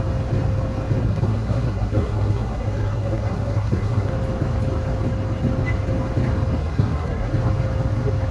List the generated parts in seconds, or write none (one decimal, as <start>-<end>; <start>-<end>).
1.0-4.1; 6.6-7.3